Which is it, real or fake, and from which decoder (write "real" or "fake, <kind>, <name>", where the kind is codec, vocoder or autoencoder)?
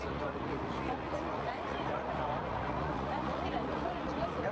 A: fake, vocoder, Vocos